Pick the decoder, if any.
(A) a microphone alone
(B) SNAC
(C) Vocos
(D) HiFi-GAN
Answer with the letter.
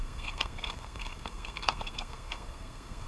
B